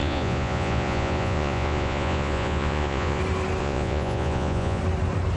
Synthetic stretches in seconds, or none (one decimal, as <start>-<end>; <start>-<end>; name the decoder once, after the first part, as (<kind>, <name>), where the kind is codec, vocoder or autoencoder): 0.0-3.2 (vocoder, Vocos); 3.6-4.8